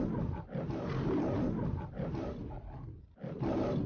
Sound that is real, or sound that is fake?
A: real